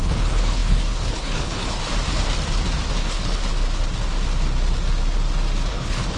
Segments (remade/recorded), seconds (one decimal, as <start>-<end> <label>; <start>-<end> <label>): 0.0-1.8 remade; 1.8-2.9 recorded; 2.9-3.4 remade; 3.4-5.7 recorded; 5.7-6.2 remade